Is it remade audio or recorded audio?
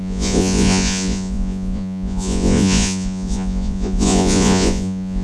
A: remade